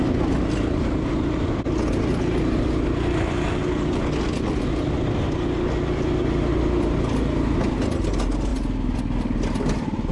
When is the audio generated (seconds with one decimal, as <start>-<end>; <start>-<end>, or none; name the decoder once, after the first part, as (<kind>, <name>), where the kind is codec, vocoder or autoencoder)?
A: none